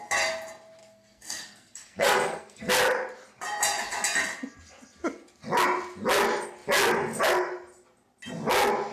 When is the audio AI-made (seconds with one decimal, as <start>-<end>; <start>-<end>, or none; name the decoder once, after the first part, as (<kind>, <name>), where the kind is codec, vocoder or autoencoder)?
0.8-2.7 (codec, SNAC)